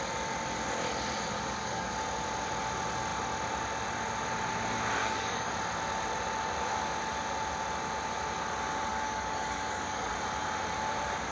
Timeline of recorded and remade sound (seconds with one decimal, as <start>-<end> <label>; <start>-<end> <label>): 0.0-1.3 recorded; 1.3-1.9 remade; 1.9-5.0 recorded; 5.0-5.5 remade; 5.5-8.9 recorded; 8.9-10.1 remade; 10.1-11.3 recorded